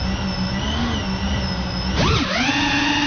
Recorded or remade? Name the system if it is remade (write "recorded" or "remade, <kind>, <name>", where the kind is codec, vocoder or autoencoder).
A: recorded